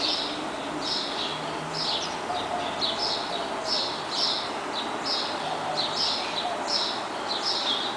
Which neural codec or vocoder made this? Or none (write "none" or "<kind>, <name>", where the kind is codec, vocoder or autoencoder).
none